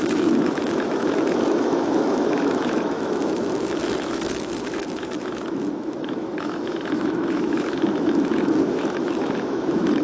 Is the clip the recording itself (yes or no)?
no